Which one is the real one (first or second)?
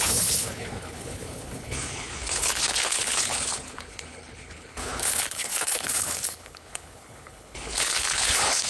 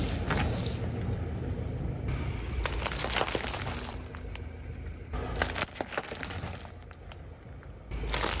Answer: second